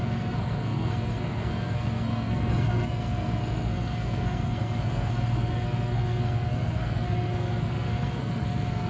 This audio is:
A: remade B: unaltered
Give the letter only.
A